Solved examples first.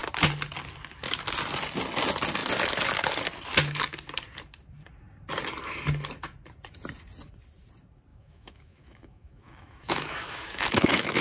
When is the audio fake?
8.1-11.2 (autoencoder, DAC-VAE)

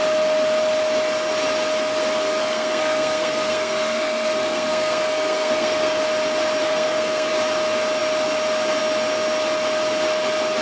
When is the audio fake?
2.3-6.0 (codec, SNAC); 6.6-7.3

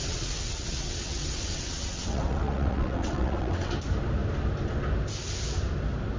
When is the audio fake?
0.0-3.7 (vocoder, WaveNeXt)

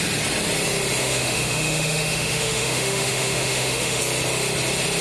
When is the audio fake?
1.0-4.0 (autoencoder, DAC-VAE)